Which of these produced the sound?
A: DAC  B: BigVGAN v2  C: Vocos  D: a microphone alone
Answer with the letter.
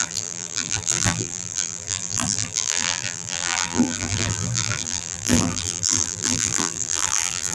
B